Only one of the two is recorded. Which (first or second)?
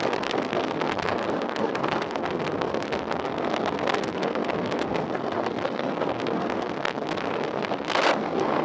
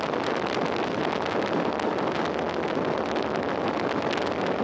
second